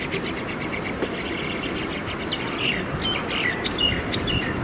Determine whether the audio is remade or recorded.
recorded